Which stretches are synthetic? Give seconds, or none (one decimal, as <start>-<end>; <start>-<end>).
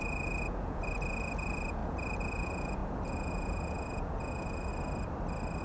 0.0-4.7